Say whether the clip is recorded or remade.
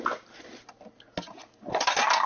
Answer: recorded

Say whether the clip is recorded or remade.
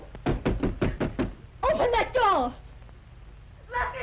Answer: recorded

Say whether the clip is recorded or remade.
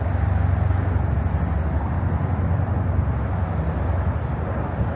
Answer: recorded